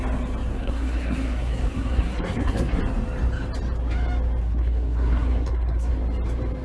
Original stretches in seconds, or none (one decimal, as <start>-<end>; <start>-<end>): 0.0-0.5; 2.8-4.4; 5.9-6.6